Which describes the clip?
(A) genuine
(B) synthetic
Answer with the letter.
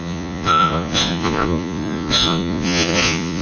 B